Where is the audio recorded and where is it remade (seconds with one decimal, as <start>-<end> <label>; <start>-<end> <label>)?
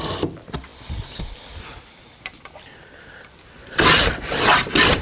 0.0-5.0 remade